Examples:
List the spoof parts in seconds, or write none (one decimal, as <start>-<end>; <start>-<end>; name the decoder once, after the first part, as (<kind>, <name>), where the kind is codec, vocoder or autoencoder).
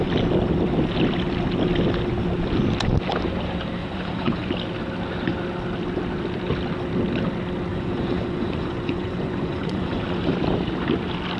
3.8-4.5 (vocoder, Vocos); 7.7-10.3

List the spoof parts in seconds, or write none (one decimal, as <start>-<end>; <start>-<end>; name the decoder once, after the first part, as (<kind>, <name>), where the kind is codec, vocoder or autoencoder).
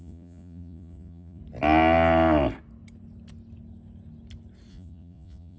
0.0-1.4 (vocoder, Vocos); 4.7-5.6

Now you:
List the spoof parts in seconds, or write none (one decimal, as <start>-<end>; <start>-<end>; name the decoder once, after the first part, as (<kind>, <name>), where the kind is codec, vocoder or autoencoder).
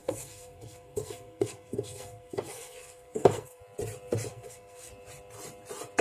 0.0-3.6 (codec, SNAC); 4.3-4.9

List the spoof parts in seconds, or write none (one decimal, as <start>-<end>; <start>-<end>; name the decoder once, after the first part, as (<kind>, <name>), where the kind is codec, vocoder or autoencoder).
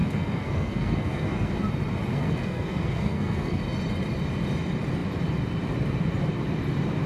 0.0-1.5 (codec, SNAC); 2.1-3.6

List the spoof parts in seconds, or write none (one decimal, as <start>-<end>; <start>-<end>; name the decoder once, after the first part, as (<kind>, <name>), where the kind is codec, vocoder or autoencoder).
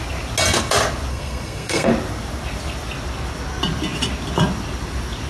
1.1-1.9 (codec, SNAC)